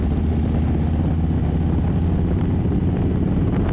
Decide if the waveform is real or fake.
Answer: real